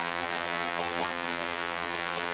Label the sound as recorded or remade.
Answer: remade